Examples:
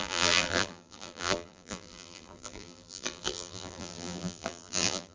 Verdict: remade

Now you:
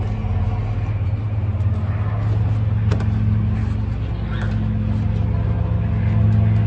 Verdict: recorded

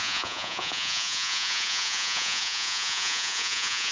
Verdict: remade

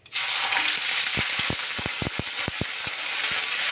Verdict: recorded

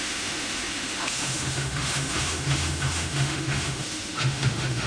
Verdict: remade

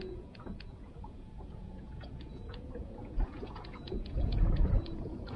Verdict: remade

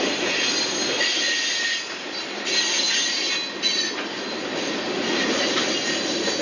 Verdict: recorded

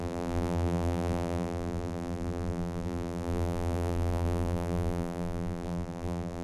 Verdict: remade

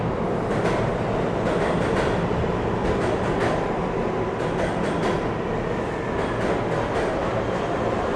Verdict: recorded